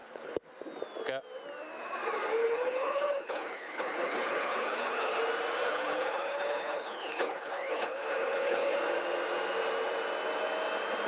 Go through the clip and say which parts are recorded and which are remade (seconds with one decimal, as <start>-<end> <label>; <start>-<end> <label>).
0.0-0.5 remade; 0.5-2.4 recorded; 2.4-5.2 remade; 5.2-5.7 recorded; 5.7-8.8 remade; 8.8-11.1 recorded